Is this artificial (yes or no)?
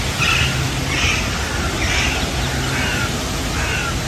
no